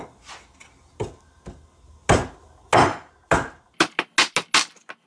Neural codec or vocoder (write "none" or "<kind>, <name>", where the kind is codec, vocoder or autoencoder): none